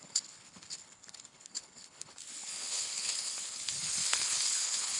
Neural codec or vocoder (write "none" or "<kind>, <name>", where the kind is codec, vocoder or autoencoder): codec, HILCodec